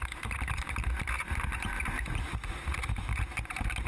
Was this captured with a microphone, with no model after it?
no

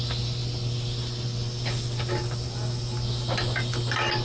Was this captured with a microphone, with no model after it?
yes